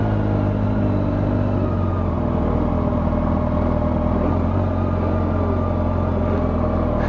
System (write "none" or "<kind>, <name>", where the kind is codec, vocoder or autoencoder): none